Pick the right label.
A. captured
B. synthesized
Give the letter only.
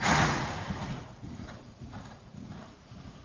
B